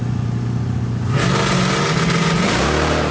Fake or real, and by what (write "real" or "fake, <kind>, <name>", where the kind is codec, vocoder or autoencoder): real